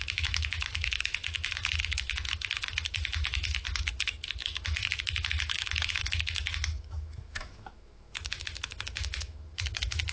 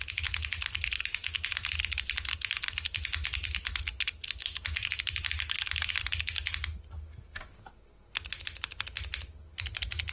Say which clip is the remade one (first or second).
first